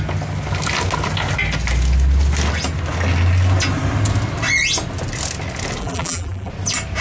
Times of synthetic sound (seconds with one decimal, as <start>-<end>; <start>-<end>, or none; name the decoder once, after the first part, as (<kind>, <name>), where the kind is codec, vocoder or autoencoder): 5.8-6.5 (vocoder, BigVGAN v2)